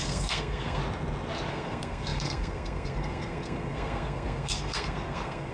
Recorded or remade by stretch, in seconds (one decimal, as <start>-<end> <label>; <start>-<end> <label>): 0.0-0.8 remade; 0.8-1.5 recorded; 1.5-5.5 remade